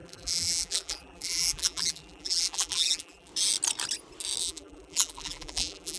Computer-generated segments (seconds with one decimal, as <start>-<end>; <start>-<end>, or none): 0.0-3.3; 4.4-6.0